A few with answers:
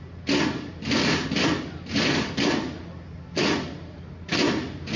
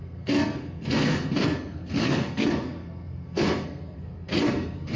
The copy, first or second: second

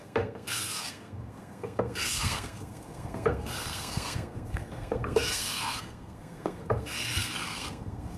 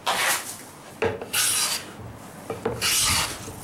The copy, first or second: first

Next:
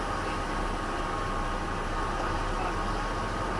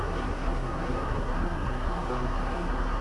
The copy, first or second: second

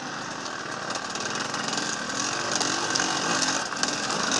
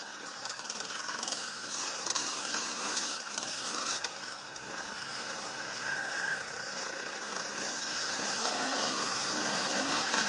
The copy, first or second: second